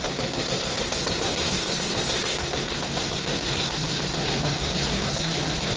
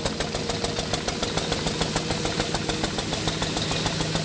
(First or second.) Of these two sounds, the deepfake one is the first